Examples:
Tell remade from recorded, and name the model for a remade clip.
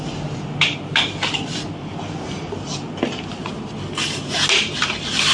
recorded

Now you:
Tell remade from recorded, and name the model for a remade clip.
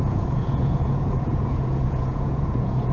remade, vocoder, Vocos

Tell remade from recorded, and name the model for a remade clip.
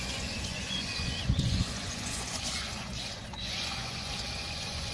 remade, vocoder, Vocos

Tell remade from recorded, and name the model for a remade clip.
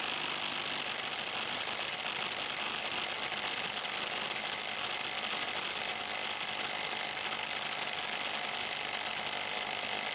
recorded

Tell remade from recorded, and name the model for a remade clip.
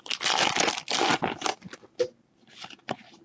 recorded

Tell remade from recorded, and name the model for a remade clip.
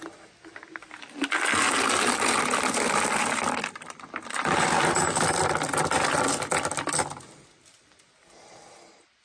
recorded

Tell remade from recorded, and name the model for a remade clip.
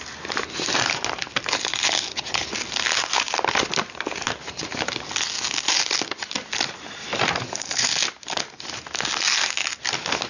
recorded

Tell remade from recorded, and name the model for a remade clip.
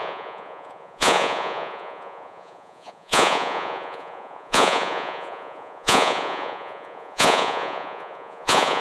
remade, vocoder, Vocos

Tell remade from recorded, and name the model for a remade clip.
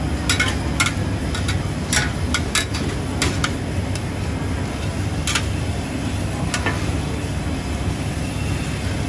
recorded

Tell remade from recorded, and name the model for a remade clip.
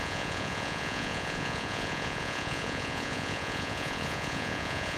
remade, vocoder, Vocos